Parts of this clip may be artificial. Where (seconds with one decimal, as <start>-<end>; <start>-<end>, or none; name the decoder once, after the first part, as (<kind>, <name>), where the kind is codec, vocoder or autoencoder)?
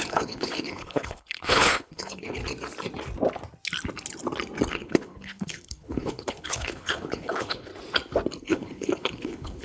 0.0-2.4 (codec, HILCodec); 4.7-7.7; 8.4-9.6